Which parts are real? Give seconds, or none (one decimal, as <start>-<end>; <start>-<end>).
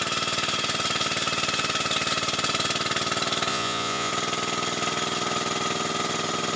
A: 0.0-3.5; 4.1-6.6